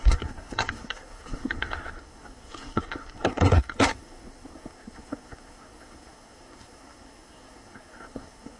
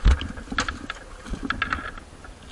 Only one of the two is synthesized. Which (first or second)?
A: first